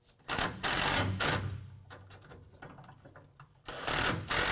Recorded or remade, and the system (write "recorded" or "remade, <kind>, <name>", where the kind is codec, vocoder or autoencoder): recorded